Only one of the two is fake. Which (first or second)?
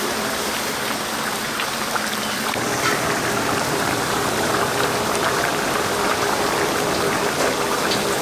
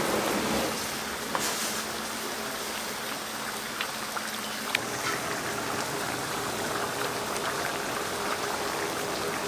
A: first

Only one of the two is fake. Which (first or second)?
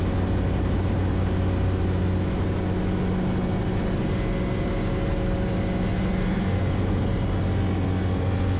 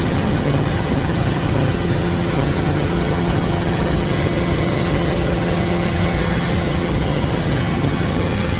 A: second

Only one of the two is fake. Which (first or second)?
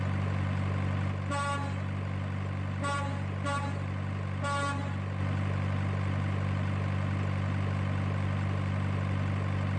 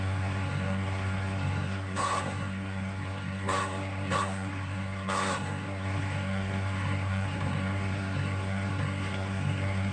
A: second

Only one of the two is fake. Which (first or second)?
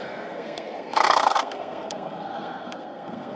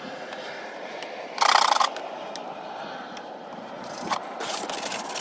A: first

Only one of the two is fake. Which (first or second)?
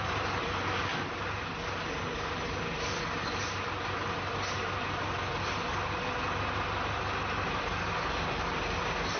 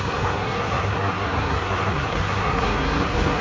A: second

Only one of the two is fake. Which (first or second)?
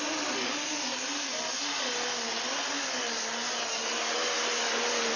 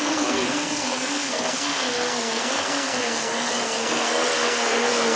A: second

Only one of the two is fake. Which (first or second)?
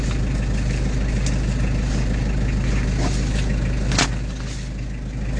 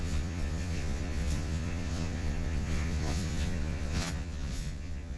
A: second